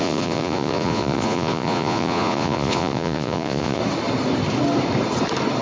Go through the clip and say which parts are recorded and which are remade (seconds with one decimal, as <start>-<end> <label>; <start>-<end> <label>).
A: 0.0-3.8 remade; 3.8-5.6 recorded